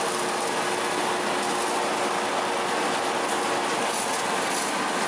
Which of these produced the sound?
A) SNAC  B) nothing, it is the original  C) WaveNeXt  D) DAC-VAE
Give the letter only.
B